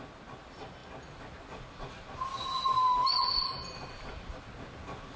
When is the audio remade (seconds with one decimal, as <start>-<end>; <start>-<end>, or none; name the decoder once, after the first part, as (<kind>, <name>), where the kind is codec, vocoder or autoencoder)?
none